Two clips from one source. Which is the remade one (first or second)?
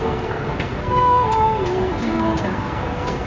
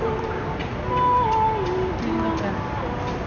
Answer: first